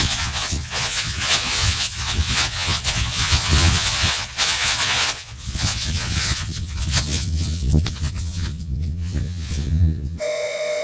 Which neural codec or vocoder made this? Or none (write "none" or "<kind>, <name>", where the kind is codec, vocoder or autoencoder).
vocoder, Vocos